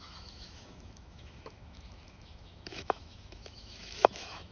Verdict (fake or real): fake